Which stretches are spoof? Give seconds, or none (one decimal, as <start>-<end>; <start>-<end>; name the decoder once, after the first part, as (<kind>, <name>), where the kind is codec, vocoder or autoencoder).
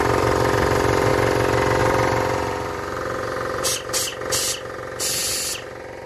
0.0-1.1 (vocoder, BigVGAN v2); 1.8-4.1